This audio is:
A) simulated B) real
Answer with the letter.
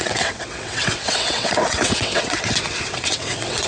A